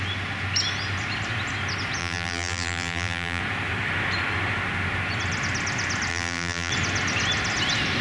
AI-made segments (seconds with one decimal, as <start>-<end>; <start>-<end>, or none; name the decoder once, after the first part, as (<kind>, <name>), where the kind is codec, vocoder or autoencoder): 2.0-3.4 (vocoder, BigVGAN v2); 6.1-6.7